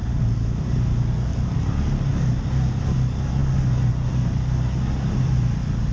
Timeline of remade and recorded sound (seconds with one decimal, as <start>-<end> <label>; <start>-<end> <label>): 0.0-5.9 recorded